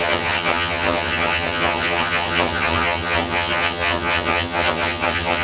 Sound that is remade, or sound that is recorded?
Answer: remade